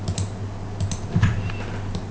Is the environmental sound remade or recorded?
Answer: recorded